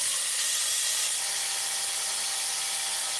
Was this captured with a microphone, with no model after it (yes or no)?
yes